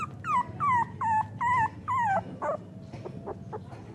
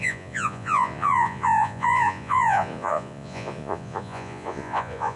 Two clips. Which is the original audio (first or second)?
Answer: first